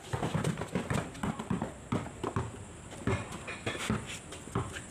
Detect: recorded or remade recorded